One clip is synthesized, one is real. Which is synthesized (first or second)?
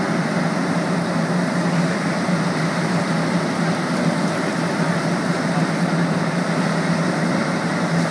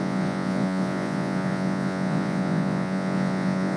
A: second